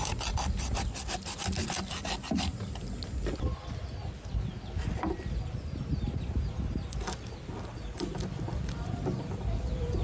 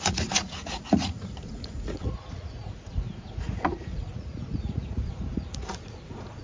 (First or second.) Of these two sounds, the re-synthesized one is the second